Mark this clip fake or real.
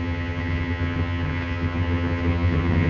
fake